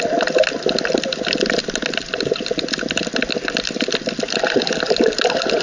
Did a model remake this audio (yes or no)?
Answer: no